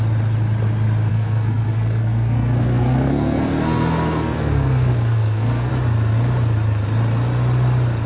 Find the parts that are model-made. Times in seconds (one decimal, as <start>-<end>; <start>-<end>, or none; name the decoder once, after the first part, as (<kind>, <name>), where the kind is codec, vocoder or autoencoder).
1.1-5.7 (codec, SNAC)